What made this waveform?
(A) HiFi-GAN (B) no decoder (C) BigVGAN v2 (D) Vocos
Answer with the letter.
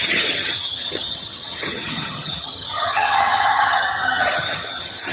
A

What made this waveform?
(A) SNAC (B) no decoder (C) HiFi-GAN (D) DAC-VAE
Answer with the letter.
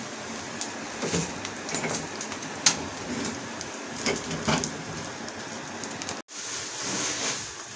B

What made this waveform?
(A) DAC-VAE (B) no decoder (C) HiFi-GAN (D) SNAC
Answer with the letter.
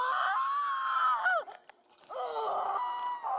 B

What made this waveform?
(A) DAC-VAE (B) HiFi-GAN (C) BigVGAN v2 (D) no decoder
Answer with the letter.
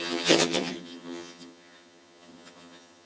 B